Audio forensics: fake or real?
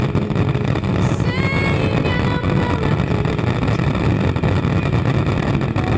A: real